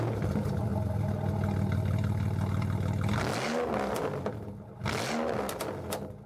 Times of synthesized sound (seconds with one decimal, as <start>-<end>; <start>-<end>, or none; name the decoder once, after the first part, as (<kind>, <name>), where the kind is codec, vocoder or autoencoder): none